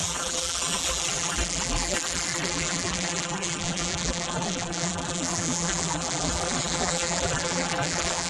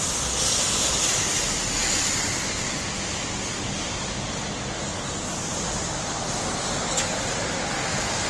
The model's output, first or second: first